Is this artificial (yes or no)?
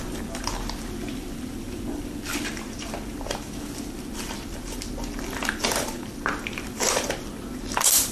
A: yes